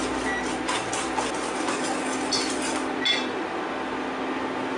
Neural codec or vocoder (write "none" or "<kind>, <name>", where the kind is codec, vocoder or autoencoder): none